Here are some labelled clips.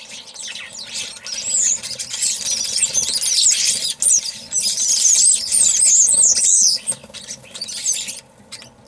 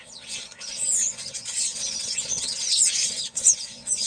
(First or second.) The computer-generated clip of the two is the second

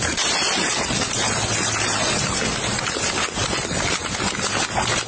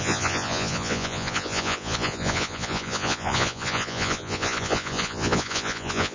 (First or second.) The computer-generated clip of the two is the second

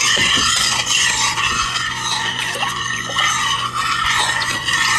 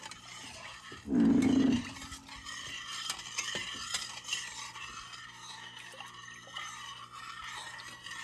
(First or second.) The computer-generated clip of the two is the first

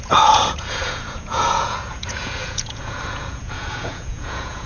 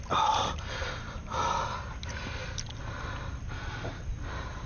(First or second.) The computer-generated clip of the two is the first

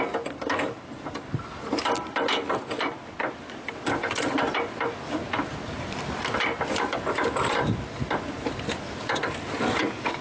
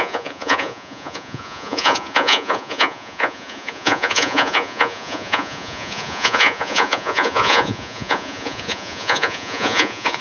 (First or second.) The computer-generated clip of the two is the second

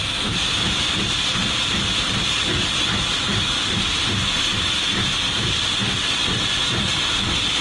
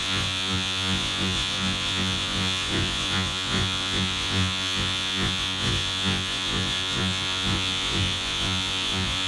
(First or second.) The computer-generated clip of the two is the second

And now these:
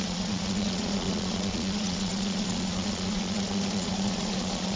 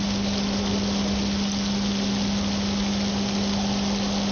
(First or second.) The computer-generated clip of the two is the first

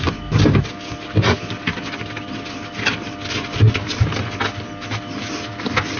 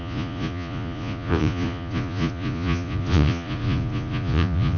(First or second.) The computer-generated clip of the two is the second